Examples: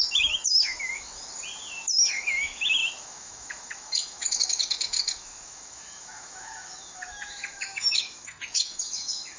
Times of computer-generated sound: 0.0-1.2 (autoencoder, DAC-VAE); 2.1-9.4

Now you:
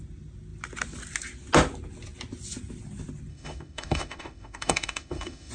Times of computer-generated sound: 3.3-5.5 (autoencoder, DAC-VAE)

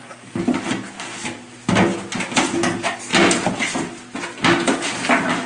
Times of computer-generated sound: none

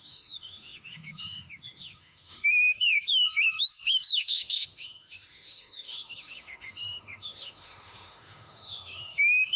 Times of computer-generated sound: 0.0-9.6 (autoencoder, DAC-VAE)